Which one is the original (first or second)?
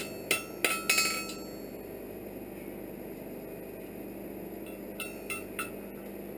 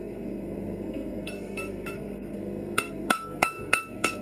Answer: first